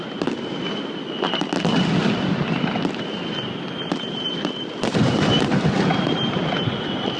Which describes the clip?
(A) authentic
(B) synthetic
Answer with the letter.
A